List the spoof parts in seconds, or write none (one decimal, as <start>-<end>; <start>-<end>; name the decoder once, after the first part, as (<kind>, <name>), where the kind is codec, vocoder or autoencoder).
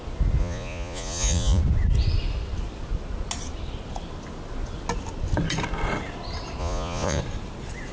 0.4-1.6 (vocoder, Vocos); 6.6-7.2